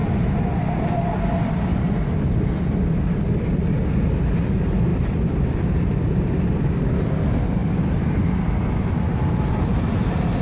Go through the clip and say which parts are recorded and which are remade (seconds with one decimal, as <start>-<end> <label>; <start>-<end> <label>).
0.0-10.4 recorded